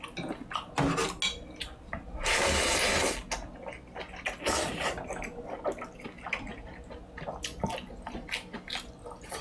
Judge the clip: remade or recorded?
recorded